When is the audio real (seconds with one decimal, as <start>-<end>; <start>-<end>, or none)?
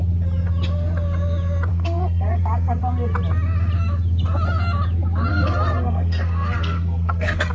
0.0-1.7; 2.8-5.3